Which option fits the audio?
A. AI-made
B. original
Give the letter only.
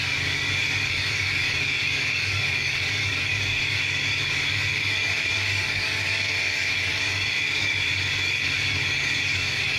A